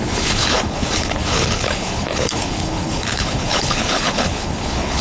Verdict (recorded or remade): remade